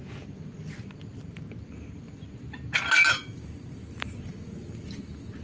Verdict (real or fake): real